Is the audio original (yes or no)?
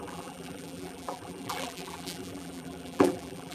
no